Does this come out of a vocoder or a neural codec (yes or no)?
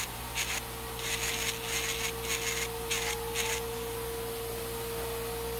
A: no